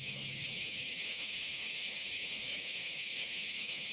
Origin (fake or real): fake